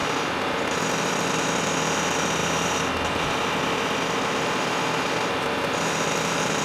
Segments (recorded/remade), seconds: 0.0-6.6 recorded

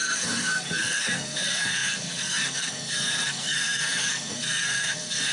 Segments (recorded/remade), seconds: 0.0-5.3 remade